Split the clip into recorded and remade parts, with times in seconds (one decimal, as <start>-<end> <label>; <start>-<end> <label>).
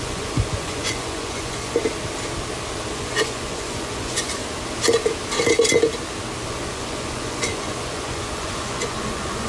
0.0-1.8 remade; 1.8-2.9 recorded; 2.9-4.4 remade; 4.4-6.5 recorded; 6.5-9.5 remade